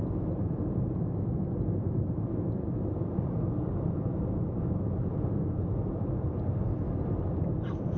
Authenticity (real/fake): fake